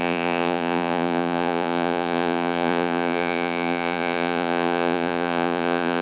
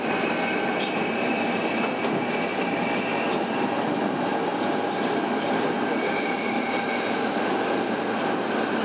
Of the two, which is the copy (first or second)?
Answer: first